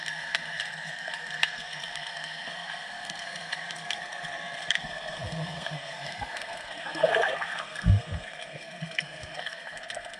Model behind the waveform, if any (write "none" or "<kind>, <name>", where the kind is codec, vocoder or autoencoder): codec, SNAC